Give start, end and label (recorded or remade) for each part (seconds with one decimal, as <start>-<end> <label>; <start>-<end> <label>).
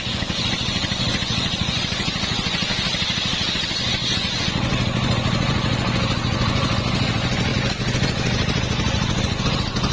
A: 0.0-2.7 remade; 2.7-3.5 recorded; 3.5-9.9 remade